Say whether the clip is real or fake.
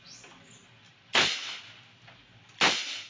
real